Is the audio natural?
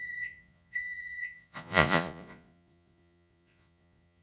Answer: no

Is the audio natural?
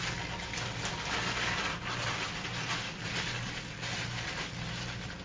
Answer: yes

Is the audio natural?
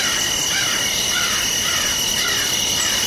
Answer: yes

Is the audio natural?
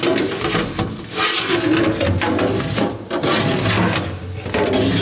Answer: yes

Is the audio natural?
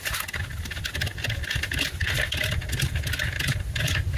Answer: yes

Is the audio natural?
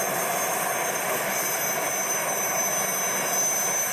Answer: yes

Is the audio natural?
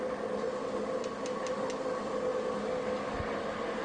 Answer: yes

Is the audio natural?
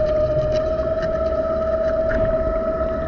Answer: yes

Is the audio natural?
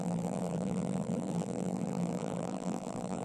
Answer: no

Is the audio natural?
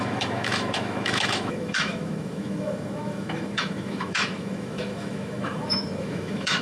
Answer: no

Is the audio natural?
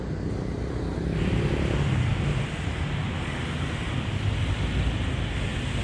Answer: yes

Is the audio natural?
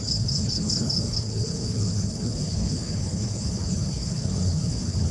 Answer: no